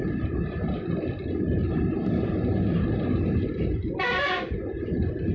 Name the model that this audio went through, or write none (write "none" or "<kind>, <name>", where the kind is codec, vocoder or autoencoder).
none